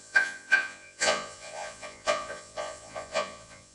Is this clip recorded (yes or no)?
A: no